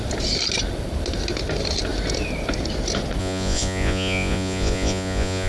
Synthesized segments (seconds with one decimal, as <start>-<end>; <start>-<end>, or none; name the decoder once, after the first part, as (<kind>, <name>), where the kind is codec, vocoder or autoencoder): 3.2-5.5 (vocoder, Vocos)